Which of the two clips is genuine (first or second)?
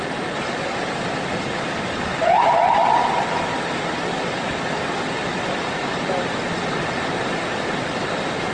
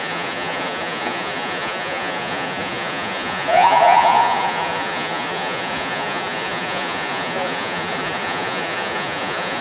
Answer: first